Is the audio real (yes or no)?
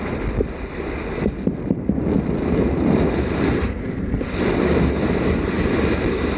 yes